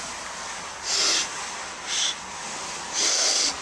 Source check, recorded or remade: recorded